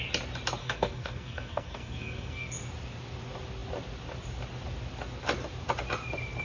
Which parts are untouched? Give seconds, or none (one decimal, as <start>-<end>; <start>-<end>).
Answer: 0.0-0.6; 2.5-6.4